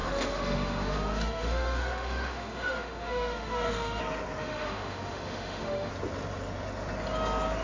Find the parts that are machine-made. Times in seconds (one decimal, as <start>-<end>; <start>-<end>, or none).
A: 0.0-4.0; 4.4-5.9